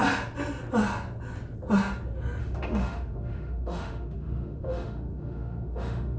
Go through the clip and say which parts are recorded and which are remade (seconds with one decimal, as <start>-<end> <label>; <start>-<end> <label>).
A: 0.0-2.4 recorded; 2.4-6.2 remade